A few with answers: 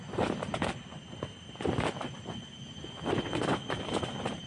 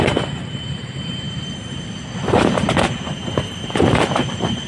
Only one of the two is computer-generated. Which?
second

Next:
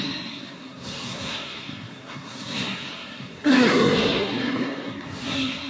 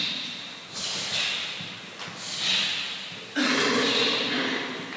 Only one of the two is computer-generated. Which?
first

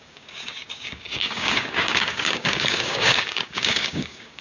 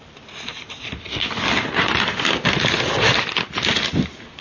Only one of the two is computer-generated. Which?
first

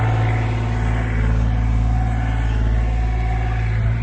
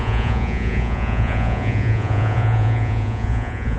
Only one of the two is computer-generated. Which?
second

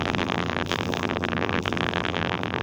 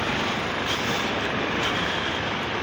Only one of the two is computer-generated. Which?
first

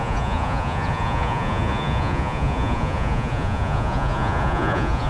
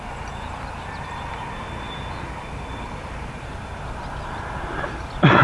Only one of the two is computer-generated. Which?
first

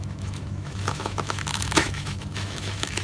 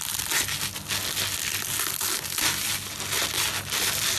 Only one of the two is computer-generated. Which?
first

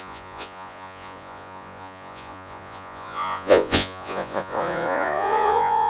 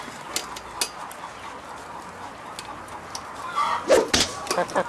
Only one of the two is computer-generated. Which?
first